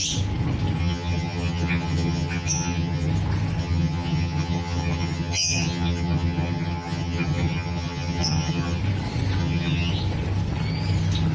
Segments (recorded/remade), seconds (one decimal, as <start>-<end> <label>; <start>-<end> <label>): 0.0-0.8 recorded; 0.8-3.1 remade; 3.1-3.6 recorded; 3.6-8.8 remade; 8.8-9.4 recorded; 9.4-9.9 remade; 9.9-11.3 recorded